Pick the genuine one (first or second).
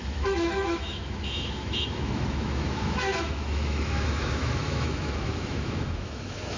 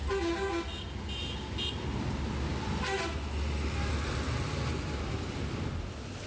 second